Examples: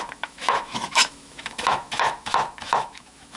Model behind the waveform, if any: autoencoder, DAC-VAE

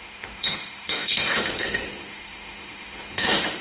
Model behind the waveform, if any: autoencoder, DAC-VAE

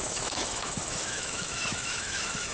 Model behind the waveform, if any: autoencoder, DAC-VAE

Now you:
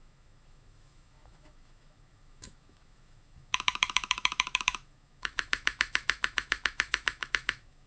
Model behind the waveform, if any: autoencoder, DAC-VAE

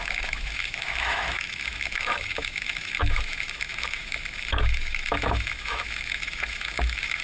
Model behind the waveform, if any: autoencoder, DAC-VAE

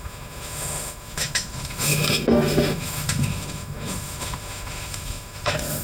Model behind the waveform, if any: autoencoder, DAC-VAE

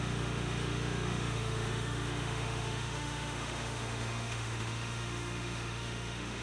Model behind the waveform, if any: autoencoder, DAC-VAE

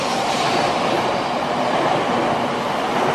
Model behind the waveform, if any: none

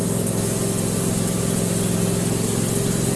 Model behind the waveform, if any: none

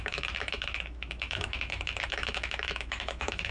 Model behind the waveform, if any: autoencoder, DAC-VAE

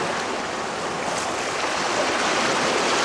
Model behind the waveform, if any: none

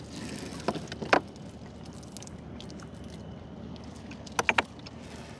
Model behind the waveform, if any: none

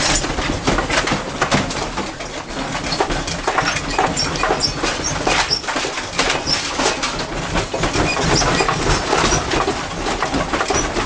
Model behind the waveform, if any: none